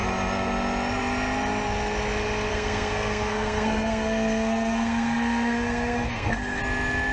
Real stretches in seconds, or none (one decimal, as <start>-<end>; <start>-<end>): 0.0-2.5; 6.6-7.1